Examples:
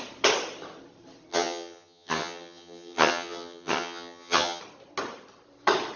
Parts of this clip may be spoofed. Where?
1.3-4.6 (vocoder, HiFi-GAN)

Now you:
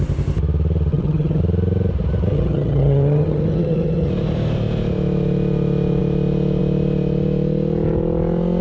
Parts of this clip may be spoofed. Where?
0.9-1.4 (vocoder, HiFi-GAN); 2.3-4.1

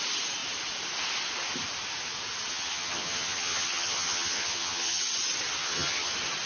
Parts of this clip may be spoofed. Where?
2.5-5.0 (vocoder, HiFi-GAN); 5.6-6.1

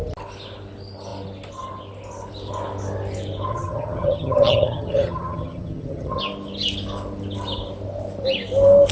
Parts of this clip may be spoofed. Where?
3.5-6.2 (vocoder, HiFi-GAN)

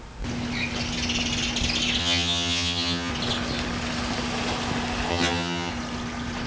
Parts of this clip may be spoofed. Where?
2.0-3.1 (vocoder, HiFi-GAN); 5.1-5.7

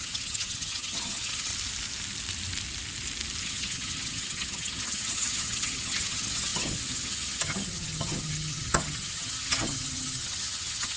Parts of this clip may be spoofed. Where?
0.0-1.5 (vocoder, HiFi-GAN); 3.4-11.0

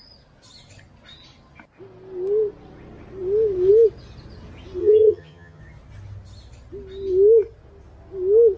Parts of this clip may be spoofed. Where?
4.8-5.6 (vocoder, HiFi-GAN)

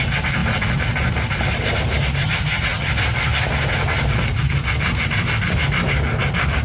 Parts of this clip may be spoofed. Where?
2.2-2.9 (vocoder, HiFi-GAN)